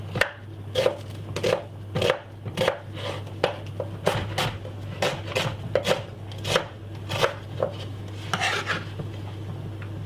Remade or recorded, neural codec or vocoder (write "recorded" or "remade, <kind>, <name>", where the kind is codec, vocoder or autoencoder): recorded